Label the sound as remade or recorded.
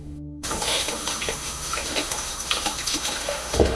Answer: remade